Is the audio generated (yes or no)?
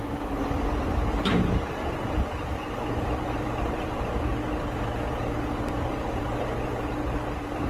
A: yes